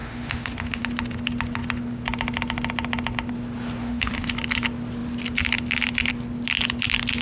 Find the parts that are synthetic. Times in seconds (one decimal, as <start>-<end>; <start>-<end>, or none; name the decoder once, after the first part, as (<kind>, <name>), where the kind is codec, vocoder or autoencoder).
0.0-0.8 (autoencoder, DAC-VAE); 3.8-4.3